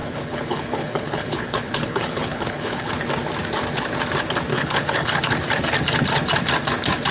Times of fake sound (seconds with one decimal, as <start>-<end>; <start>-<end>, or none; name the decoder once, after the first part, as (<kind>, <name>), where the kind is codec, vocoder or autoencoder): 0.0-2.9 (codec, HILCodec); 4.5-5.2